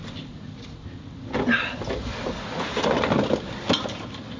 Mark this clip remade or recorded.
recorded